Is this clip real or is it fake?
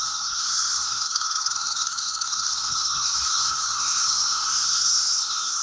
fake